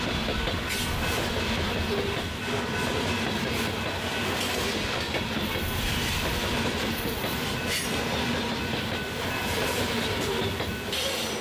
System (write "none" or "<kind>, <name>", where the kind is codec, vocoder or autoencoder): none